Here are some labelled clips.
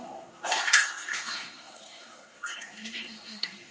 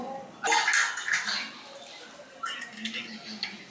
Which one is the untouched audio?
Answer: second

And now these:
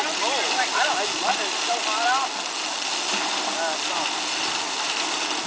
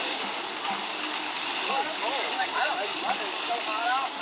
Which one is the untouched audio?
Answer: first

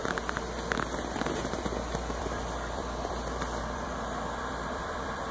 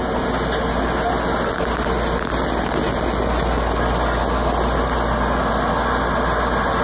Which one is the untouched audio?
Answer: second